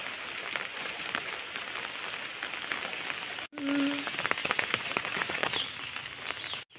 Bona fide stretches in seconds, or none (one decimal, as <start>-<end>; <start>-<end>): 0.0-0.7; 1.3-4.4; 5.5-6.8